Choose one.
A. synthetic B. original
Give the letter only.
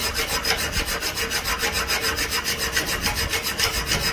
B